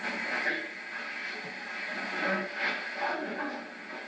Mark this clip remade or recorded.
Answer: recorded